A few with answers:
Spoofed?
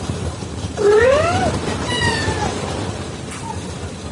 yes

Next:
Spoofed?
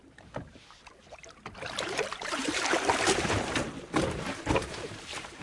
yes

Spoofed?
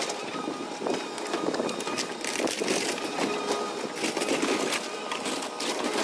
no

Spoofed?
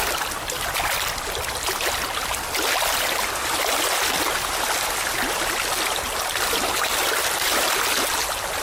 no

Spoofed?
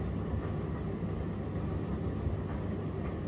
no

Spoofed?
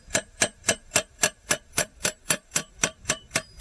yes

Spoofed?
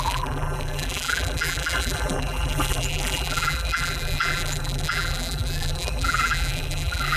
yes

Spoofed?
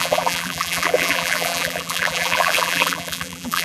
yes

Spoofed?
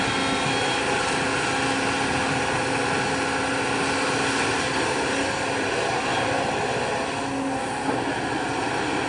no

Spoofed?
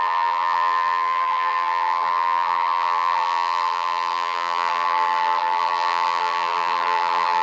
yes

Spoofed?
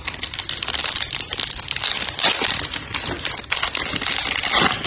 yes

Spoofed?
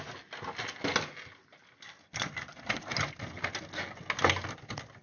no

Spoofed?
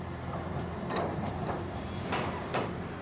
yes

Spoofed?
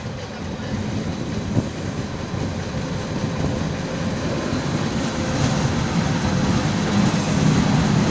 no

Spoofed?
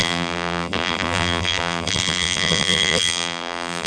yes